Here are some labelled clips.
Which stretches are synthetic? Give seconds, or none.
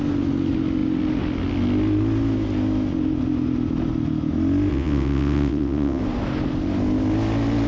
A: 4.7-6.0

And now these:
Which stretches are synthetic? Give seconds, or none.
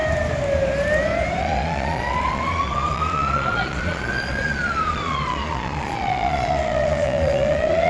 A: 1.4-7.9